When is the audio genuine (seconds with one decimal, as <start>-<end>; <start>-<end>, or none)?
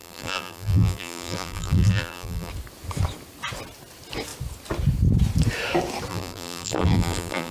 2.5-6.1